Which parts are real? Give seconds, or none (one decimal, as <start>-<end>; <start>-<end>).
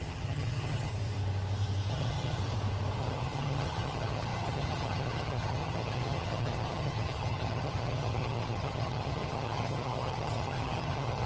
0.9-1.9; 2.4-3.0